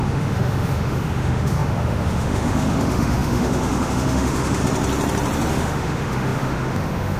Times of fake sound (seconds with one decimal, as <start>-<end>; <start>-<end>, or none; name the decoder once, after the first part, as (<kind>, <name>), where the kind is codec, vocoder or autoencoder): 0.0-4.6 (autoencoder, DAC-VAE); 5.5-7.2